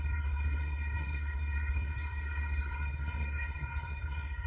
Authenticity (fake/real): fake